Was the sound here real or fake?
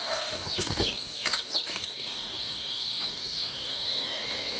fake